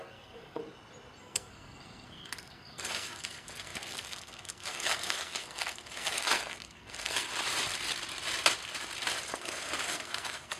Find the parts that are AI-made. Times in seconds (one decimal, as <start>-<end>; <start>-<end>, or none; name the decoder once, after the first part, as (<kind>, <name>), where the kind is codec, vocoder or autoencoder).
0.0-0.6 (codec, SNAC); 1.2-7.3; 9.3-10.6